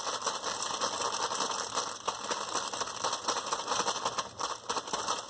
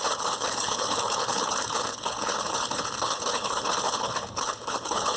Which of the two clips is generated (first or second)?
second